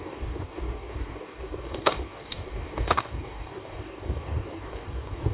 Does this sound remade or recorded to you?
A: remade